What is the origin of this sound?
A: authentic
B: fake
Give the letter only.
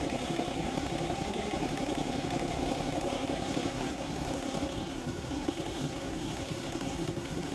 B